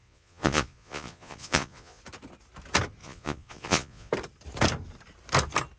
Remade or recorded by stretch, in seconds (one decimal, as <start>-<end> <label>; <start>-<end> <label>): 0.0-2.0 remade; 2.0-3.0 recorded; 3.0-4.1 remade; 4.1-5.8 recorded